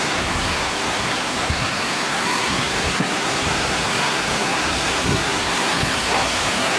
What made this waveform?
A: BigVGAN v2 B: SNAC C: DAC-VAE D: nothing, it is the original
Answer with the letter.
B